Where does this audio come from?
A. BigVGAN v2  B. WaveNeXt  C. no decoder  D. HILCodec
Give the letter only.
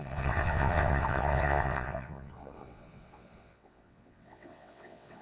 B